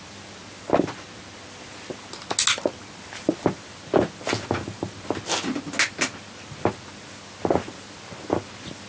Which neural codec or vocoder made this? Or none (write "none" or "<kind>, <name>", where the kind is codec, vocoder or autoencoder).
none